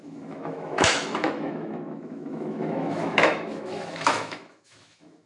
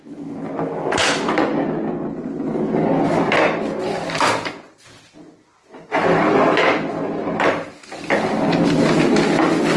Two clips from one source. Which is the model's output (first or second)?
first